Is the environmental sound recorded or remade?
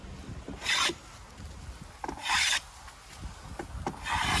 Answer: recorded